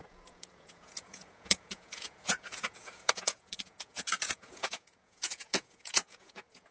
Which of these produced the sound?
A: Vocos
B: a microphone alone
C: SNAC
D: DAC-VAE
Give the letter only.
A